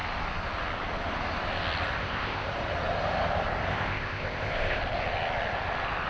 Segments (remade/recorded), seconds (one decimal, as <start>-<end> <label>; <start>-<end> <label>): 0.0-2.0 recorded; 2.0-2.5 remade; 2.5-3.7 recorded; 3.7-4.8 remade; 4.8-6.1 recorded

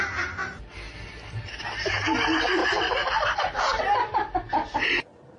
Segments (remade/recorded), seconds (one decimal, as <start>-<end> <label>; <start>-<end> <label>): 0.0-5.4 recorded

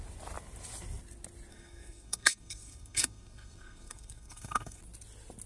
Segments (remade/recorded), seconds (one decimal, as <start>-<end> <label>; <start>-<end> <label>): 0.0-1.5 recorded; 1.5-4.8 remade; 4.8-5.5 recorded

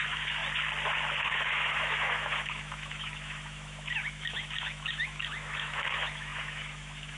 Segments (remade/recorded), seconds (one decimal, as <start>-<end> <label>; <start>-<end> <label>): 0.0-0.4 remade; 0.4-1.2 recorded; 1.2-7.2 remade

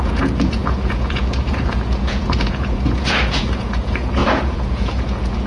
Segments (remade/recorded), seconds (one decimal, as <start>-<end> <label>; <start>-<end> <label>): 0.0-5.5 remade

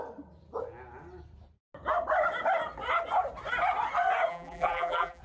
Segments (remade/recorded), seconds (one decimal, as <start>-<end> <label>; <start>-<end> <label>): 0.0-4.3 recorded; 4.3-5.2 remade

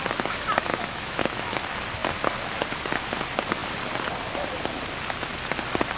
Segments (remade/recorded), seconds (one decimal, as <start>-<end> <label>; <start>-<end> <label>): 0.0-0.7 recorded; 0.7-1.6 remade; 1.6-6.0 recorded